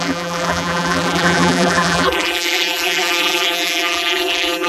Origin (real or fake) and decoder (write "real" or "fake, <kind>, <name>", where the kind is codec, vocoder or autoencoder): fake, vocoder, BigVGAN v2